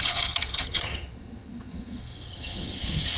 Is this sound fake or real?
fake